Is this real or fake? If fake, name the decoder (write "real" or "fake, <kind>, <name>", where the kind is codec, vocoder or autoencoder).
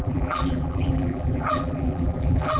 fake, vocoder, BigVGAN v2